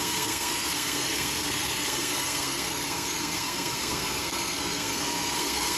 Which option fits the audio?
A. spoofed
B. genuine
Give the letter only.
A